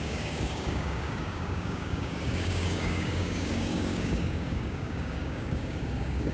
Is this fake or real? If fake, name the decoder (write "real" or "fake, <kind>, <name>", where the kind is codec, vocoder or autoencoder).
fake, codec, DAC